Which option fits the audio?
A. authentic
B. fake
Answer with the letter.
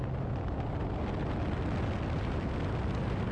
A